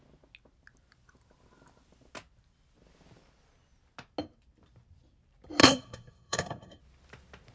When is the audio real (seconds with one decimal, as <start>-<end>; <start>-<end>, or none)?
0.0-5.6; 6.8-7.5